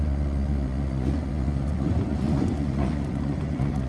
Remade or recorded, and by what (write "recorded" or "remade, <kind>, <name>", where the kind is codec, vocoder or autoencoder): remade, vocoder, Vocos